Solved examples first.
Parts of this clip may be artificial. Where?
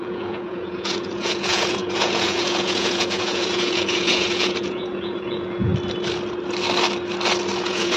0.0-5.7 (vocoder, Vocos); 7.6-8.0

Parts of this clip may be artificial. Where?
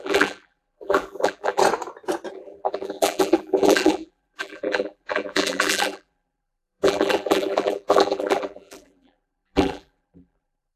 0.0-1.6 (vocoder, BigVGAN v2); 2.3-10.8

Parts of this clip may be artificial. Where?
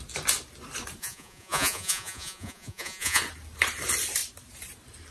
1.0-3.2 (vocoder, Vocos)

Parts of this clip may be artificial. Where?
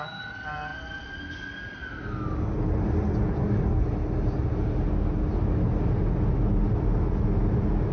none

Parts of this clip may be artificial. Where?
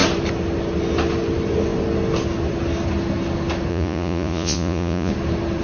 3.7-5.1 (vocoder, Vocos)